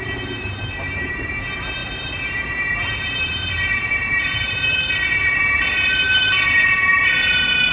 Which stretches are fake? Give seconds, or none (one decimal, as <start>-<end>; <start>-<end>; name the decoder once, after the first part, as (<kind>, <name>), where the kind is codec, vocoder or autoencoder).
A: 0.0-7.7 (vocoder, BigVGAN v2)